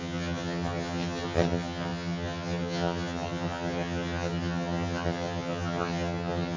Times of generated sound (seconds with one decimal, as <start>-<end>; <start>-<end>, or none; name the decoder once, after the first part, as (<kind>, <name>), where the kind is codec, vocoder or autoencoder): 0.0-6.6 (vocoder, HiFi-GAN)